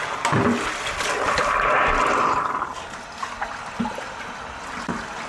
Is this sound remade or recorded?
recorded